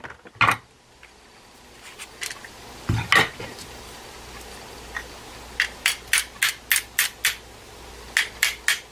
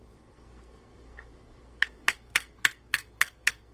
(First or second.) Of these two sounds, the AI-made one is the second